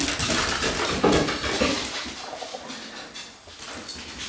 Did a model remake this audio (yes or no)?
no